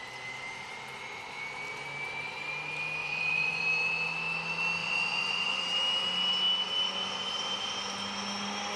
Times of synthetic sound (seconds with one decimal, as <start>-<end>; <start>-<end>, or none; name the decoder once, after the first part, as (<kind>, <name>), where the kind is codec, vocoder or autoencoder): 3.0-3.6 (vocoder, Vocos); 4.8-5.6